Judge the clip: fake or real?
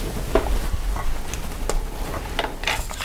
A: real